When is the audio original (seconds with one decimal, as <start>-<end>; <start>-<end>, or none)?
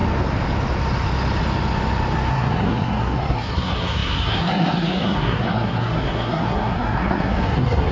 0.0-2.3